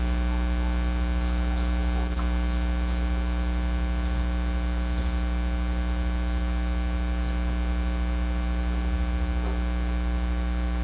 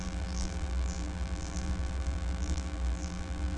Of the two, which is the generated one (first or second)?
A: second